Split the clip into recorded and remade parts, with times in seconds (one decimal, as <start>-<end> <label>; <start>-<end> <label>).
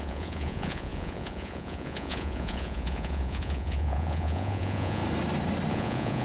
0.0-5.0 remade; 5.0-5.7 recorded; 5.7-6.2 remade